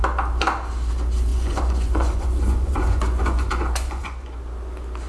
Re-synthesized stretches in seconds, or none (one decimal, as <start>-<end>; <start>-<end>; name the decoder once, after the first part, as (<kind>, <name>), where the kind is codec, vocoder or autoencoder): 1.3-4.4 (vocoder, Vocos)

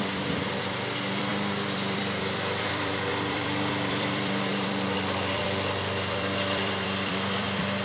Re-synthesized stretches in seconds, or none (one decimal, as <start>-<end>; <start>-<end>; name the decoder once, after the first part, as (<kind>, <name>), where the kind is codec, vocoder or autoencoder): 0.0-7.8 (vocoder, BigVGAN v2)

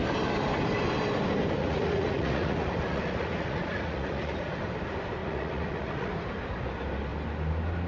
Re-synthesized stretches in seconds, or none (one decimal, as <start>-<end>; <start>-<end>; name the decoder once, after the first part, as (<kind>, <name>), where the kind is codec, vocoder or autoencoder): 1.6-4.6 (vocoder, Vocos); 5.2-6.1

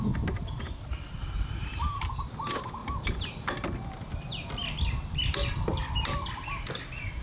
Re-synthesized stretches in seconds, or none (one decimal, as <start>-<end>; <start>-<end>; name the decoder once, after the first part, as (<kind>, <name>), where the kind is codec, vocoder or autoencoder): 1.2-2.2 (vocoder, BigVGAN v2); 2.8-3.5; 5.8-6.8

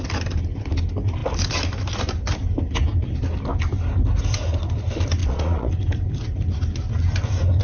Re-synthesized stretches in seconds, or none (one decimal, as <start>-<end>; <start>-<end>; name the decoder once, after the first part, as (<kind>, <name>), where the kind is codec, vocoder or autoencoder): 5.2-5.7 (vocoder, Vocos)

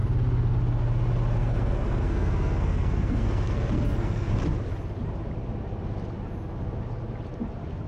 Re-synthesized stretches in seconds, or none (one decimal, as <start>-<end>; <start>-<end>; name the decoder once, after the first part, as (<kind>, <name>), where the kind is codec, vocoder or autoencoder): 1.4-4.3 (codec, SNAC)

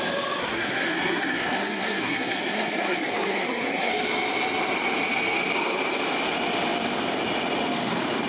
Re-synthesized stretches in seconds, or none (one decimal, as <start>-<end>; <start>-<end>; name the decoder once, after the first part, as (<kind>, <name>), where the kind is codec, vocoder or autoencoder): 0.4-3.9 (codec, SNAC)

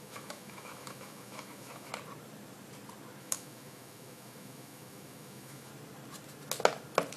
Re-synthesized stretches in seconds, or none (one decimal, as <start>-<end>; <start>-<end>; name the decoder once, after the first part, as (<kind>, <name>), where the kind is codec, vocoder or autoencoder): 0.0-1.9 (autoencoder, DAC-VAE); 3.2-5.7